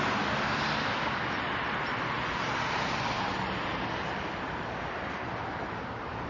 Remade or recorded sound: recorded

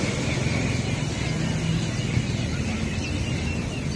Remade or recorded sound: recorded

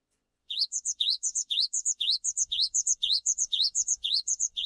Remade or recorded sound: remade